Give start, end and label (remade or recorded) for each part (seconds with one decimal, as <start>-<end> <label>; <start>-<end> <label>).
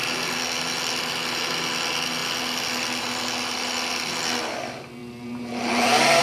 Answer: 0.0-6.2 recorded